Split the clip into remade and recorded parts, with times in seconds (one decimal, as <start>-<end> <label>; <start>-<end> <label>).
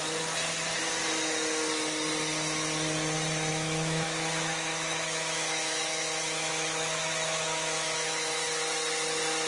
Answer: 0.0-3.5 recorded; 3.5-8.5 remade; 8.5-9.5 recorded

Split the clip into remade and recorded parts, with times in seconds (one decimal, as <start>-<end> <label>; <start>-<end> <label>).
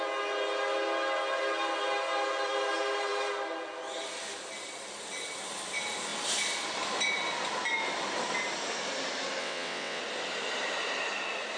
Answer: 0.0-9.4 recorded; 9.4-10.0 remade; 10.0-11.6 recorded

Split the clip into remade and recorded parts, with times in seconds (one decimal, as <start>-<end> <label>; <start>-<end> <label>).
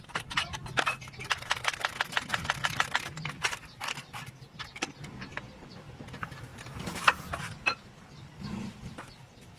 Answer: 0.0-2.3 remade; 2.3-3.6 recorded; 3.6-6.5 remade; 6.5-7.1 recorded; 7.1-9.6 remade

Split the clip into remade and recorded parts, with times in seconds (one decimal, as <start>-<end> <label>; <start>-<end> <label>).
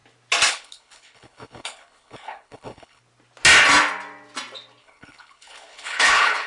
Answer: 0.0-0.5 recorded; 0.5-3.0 remade; 3.0-4.8 recorded; 4.8-6.5 remade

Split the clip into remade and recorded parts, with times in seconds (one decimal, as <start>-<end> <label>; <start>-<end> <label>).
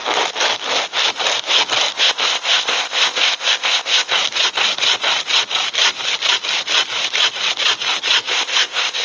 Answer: 0.0-2.0 recorded; 2.0-4.1 remade; 4.1-8.3 recorded; 8.3-9.0 remade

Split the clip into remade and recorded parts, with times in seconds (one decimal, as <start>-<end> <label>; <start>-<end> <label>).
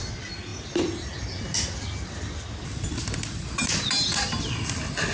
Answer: 0.0-5.1 recorded